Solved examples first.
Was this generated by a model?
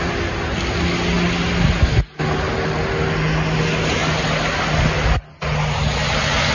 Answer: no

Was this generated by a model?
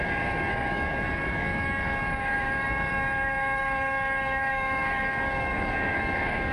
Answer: yes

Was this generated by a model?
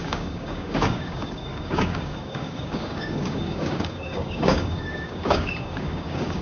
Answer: yes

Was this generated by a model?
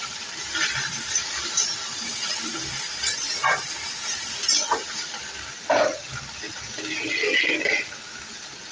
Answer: no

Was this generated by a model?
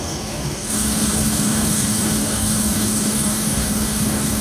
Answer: yes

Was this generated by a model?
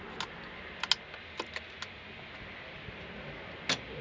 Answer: no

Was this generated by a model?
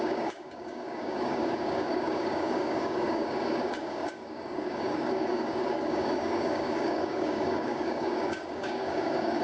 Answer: yes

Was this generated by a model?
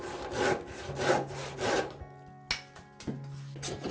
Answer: no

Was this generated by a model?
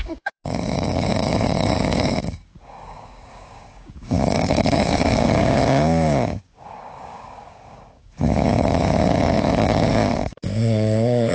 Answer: yes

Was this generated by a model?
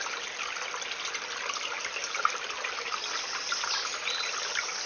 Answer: no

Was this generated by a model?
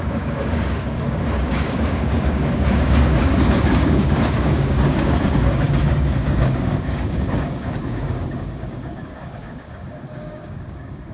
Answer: yes